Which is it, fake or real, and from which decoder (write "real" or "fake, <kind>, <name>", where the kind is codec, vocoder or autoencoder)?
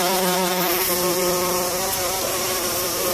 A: fake, vocoder, BigVGAN v2